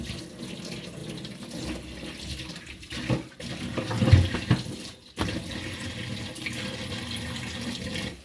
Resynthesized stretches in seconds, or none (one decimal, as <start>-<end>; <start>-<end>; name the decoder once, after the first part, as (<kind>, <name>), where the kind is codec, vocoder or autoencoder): none